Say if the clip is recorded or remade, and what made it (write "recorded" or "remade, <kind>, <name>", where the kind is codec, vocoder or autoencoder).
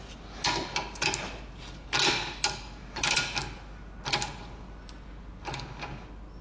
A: recorded